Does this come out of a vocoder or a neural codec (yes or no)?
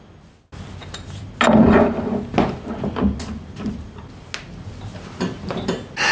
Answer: no